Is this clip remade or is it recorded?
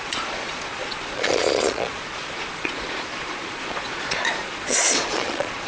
remade